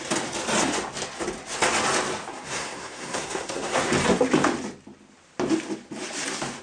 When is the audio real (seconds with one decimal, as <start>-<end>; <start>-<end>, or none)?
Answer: 0.0-2.3; 3.9-6.6